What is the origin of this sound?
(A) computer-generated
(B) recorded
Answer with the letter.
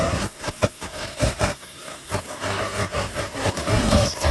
A